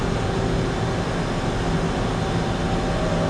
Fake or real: real